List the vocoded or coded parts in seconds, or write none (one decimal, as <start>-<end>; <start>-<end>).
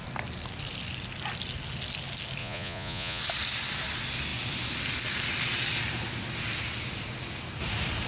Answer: 2.4-3.2